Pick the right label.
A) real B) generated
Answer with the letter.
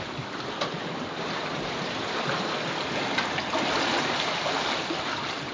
A